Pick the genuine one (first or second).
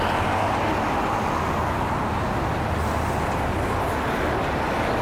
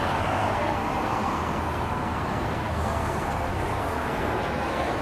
first